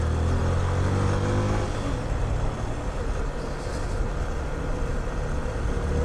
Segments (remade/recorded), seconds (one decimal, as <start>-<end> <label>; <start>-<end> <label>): 0.0-6.0 recorded